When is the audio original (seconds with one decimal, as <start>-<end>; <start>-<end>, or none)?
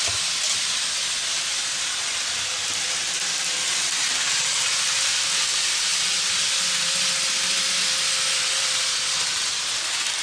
0.0-10.2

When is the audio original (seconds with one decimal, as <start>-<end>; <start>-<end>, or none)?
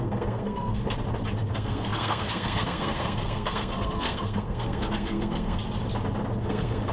0.8-1.5; 5.6-6.4